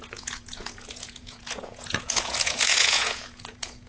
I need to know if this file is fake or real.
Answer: fake